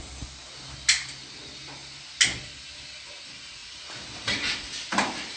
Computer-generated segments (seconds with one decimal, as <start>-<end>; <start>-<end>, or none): none